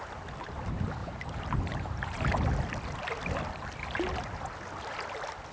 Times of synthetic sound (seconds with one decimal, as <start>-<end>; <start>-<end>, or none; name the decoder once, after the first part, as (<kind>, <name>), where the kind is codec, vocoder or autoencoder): 1.0-2.4 (vocoder, BigVGAN v2)